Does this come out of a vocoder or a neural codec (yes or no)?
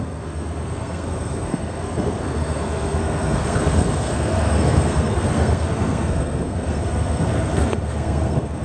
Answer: yes